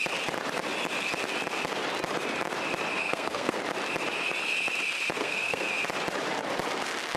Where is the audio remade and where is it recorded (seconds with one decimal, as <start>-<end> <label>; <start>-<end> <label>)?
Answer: 0.0-3.0 recorded; 3.0-3.6 remade; 3.6-5.2 recorded; 5.2-5.7 remade; 5.7-7.2 recorded